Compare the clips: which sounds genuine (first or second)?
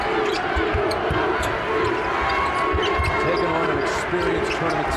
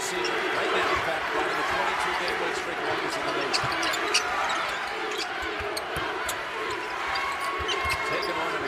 first